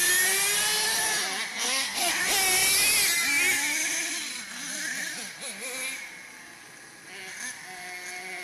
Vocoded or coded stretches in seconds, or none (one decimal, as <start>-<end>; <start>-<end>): 1.5-2.1

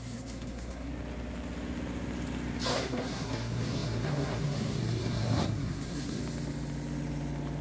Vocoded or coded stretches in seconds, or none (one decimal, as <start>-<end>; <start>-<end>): 0.0-0.9; 2.7-6.2

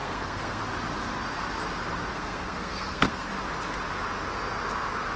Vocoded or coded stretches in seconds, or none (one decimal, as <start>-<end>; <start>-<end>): 0.0-0.6; 2.1-3.3